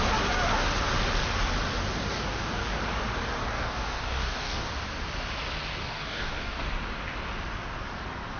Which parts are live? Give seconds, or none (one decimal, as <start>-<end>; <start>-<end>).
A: 0.0-2.1; 2.8-3.4; 4.7-5.8; 6.6-8.4

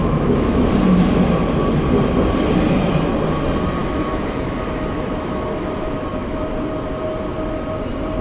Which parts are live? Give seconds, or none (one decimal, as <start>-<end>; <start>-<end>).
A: 0.7-3.8; 6.4-8.2

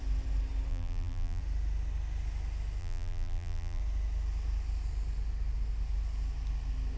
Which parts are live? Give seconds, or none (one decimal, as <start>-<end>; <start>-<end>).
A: 0.0-0.7; 1.4-2.8; 3.8-7.0